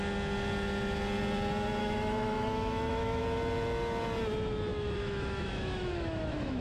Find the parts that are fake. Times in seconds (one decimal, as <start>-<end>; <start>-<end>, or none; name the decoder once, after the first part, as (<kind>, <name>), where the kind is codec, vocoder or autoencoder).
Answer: 1.8-3.2 (autoencoder, DAC-VAE); 4.7-6.6